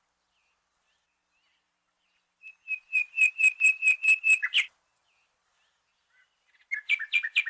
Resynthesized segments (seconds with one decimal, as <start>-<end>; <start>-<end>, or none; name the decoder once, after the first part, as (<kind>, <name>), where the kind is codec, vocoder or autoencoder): 1.5-4.7 (vocoder, BigVGAN v2)